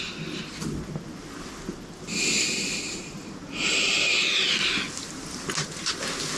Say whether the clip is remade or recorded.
recorded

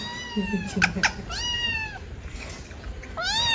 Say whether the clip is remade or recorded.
recorded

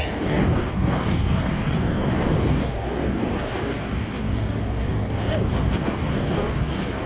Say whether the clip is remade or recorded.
remade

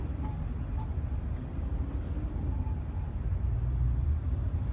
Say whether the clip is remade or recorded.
recorded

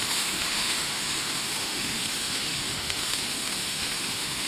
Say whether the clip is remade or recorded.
remade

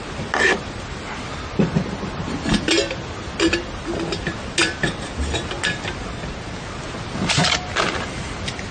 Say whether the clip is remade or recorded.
recorded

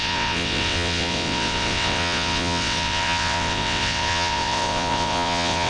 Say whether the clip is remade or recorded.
remade